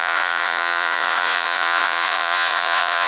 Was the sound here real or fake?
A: fake